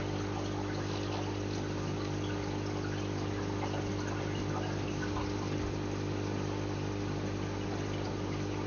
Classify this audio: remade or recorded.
recorded